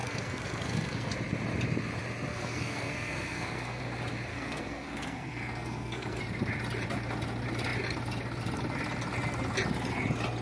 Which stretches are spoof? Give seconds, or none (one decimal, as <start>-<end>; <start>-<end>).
0.0-1.1; 2.3-3.8; 4.3-6.2